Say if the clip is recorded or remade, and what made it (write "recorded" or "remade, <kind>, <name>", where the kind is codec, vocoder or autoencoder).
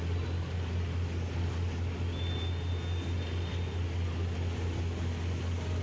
recorded